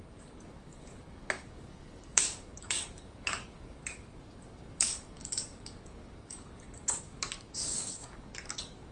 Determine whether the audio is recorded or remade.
remade